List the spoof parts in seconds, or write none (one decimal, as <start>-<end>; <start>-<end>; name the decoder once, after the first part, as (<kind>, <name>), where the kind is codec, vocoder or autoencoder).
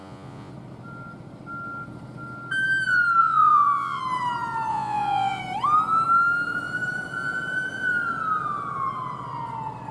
0.0-0.5 (vocoder, Vocos); 3.2-4.0; 4.7-5.4